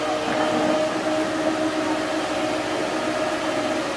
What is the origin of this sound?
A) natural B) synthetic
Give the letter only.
A